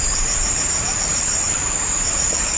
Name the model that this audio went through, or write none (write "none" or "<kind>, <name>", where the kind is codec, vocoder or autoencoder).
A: vocoder, BigVGAN v2